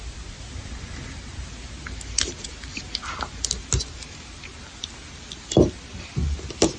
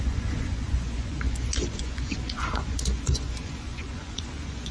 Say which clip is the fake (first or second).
second